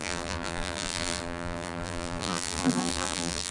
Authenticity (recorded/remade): remade